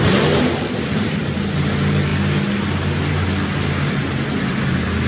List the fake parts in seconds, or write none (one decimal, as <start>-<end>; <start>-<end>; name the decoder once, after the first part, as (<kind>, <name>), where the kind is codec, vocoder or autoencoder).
none